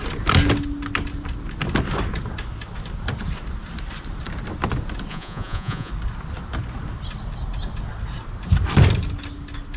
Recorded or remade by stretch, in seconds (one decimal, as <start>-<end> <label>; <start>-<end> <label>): 0.0-5.1 recorded; 5.1-5.9 remade; 5.9-9.8 recorded